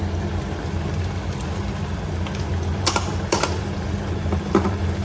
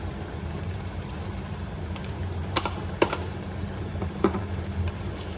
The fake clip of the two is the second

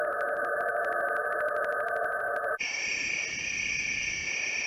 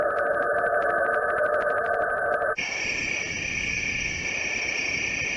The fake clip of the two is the second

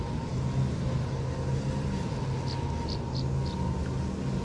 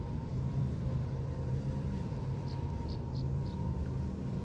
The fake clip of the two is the second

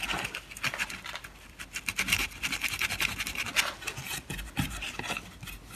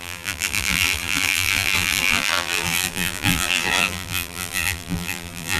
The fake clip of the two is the second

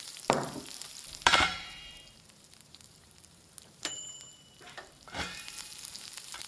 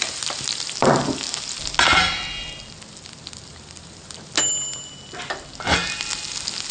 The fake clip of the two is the first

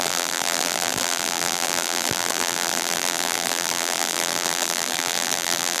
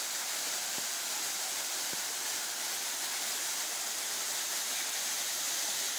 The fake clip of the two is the first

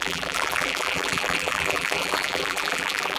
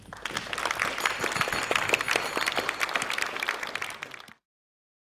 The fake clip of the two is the first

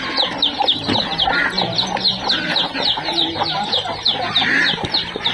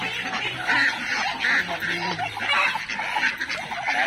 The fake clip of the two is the first